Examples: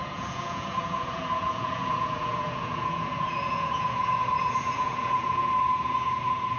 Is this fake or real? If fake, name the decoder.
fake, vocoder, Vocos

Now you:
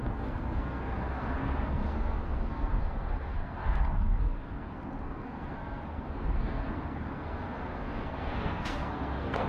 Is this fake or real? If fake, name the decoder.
fake, codec, SNAC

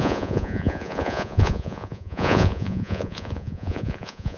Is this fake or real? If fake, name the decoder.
fake, vocoder, Vocos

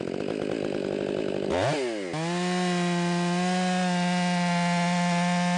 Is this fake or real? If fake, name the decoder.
real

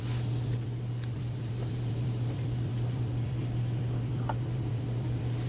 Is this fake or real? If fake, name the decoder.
fake, vocoder, BigVGAN v2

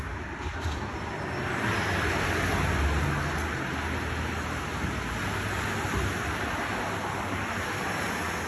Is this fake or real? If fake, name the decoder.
real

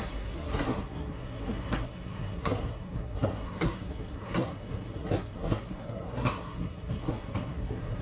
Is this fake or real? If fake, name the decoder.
fake, codec, SNAC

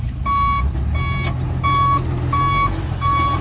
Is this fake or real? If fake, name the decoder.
real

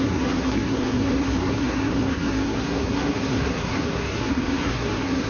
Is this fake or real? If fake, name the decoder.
fake, codec, SNAC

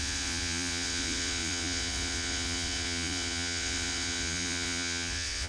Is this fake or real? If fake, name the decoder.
fake, vocoder, Vocos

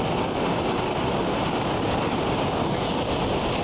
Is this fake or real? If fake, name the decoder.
real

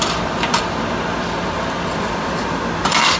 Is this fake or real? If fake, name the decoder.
fake, vocoder, BigVGAN v2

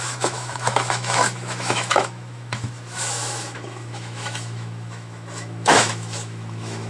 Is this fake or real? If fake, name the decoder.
fake, autoencoder, DAC-VAE